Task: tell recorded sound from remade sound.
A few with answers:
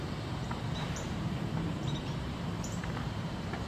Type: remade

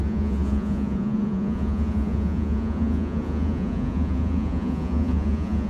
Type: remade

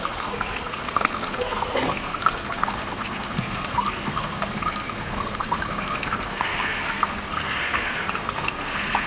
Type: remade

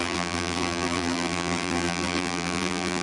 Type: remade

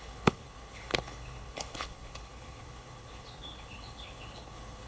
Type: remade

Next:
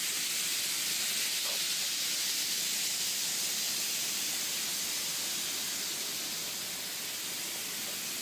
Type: recorded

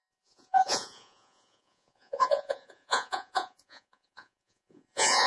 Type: remade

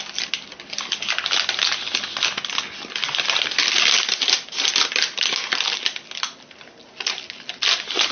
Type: recorded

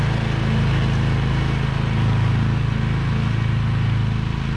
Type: recorded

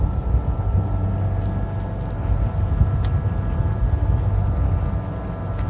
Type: recorded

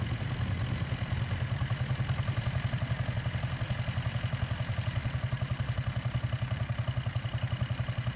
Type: recorded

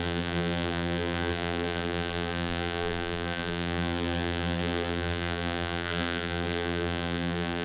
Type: remade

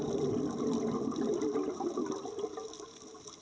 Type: recorded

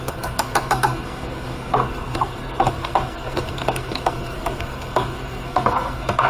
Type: remade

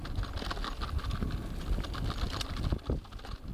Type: recorded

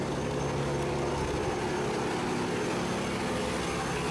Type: recorded